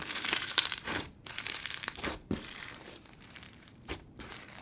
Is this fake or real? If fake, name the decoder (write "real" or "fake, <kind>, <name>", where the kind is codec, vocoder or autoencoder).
fake, vocoder, BigVGAN v2